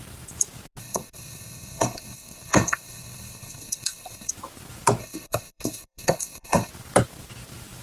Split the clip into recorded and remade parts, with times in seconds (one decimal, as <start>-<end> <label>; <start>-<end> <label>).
0.0-0.8 recorded; 0.8-4.3 remade; 4.3-5.0 recorded; 5.0-6.7 remade; 6.7-7.8 recorded